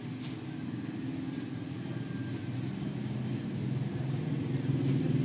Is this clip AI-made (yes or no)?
no